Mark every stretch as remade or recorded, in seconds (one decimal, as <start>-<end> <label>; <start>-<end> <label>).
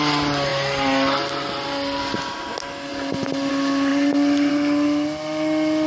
0.0-0.5 recorded; 0.5-2.0 remade; 2.0-2.9 recorded; 2.9-3.5 remade; 3.5-3.9 recorded; 3.9-4.5 remade; 4.5-5.9 recorded